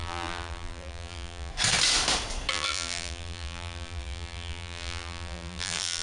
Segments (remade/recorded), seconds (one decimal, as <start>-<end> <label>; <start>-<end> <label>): 0.0-1.5 remade; 1.5-2.5 recorded; 2.5-6.0 remade